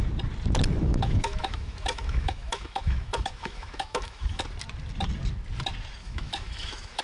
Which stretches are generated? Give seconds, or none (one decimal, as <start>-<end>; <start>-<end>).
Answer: 0.9-4.4; 6.0-7.0